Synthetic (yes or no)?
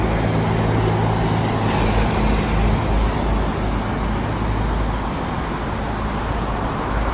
no